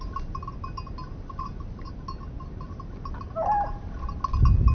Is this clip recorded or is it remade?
recorded